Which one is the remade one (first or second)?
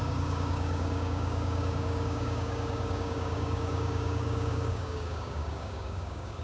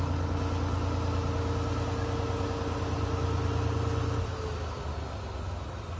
first